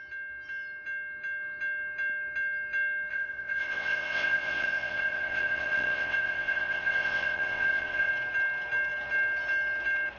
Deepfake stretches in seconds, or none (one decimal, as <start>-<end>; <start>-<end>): 3.1-8.1

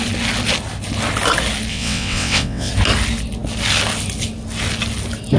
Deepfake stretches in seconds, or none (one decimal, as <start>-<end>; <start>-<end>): 1.7-2.7

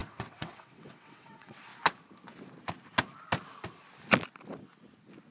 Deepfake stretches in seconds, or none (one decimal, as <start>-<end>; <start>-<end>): 0.0-1.7

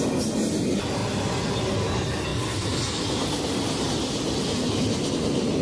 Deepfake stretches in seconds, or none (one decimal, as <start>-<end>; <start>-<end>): none

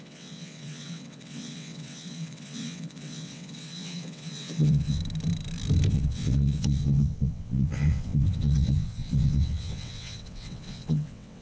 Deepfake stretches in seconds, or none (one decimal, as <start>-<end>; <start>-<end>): 0.0-5.0; 5.9-11.4